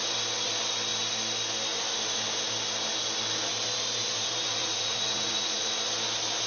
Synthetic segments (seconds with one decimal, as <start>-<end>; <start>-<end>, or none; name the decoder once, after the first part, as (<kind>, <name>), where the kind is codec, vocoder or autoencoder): 4.6-5.7 (vocoder, Vocos)